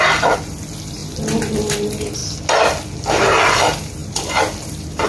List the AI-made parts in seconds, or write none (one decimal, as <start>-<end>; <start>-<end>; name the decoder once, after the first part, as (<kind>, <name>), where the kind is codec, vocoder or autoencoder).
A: 0.0-1.0 (vocoder, BigVGAN v2); 1.7-2.2; 2.9-5.1